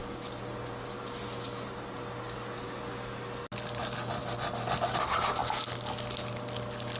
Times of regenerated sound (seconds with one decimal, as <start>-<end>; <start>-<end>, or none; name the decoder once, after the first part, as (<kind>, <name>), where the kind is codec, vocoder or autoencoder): none